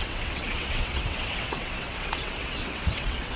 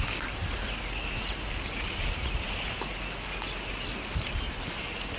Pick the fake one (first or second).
first